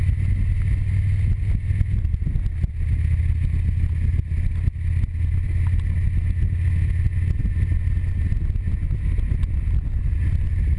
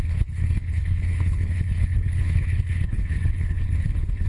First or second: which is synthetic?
second